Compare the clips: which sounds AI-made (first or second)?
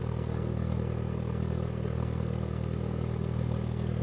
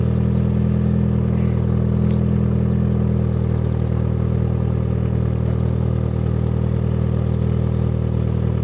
first